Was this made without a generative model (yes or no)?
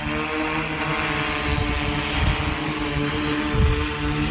yes